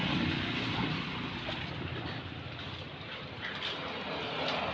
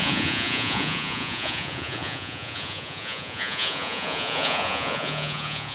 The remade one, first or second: second